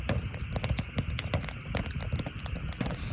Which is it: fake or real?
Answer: real